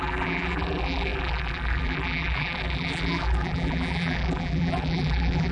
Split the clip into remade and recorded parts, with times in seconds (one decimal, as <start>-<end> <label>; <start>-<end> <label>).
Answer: 0.0-5.5 remade